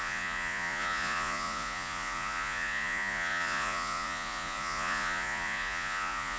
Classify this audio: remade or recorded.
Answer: remade